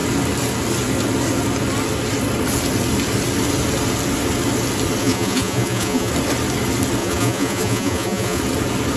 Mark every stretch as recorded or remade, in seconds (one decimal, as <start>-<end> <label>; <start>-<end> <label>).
0.0-5.0 recorded; 5.0-6.1 remade; 6.1-7.0 recorded; 7.0-8.4 remade; 8.4-9.0 recorded